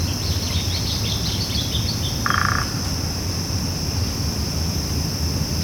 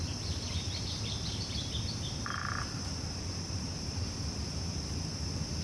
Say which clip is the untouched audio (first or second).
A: first